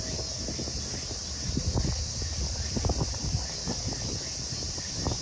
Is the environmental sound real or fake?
real